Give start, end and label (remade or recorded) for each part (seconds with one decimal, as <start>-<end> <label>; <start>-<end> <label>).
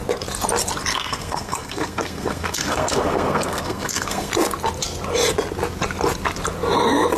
0.0-0.9 recorded; 0.9-4.3 remade; 4.3-7.2 recorded